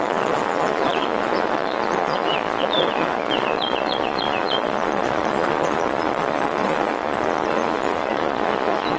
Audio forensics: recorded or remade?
remade